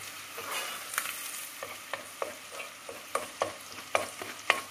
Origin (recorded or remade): remade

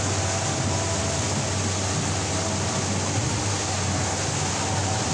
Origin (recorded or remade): recorded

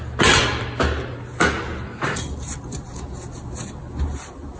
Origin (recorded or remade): recorded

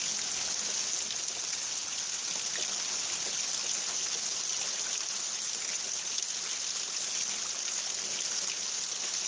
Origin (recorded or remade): recorded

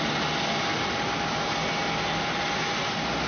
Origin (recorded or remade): recorded